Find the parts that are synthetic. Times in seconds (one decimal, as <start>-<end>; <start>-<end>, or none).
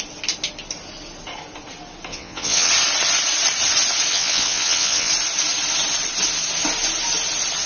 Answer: 2.1-2.7; 4.1-5.1